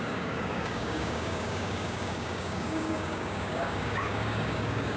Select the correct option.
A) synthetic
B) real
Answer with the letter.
A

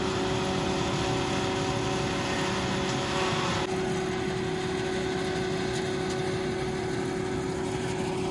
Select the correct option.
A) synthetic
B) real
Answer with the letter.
B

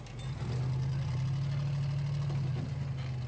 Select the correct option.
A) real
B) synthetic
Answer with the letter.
A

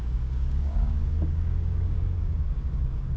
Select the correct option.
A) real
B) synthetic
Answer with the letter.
B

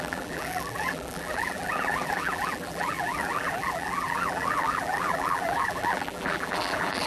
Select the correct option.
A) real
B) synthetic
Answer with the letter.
B